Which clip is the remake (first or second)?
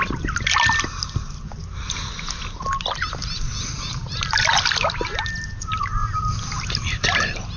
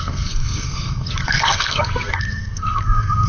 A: second